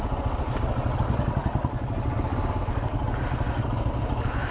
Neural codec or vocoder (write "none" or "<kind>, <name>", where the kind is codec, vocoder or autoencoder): none